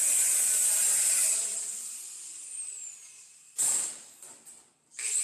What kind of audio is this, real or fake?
real